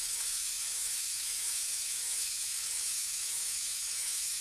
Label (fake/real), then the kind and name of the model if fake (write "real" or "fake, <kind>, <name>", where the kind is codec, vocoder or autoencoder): fake, autoencoder, DAC-VAE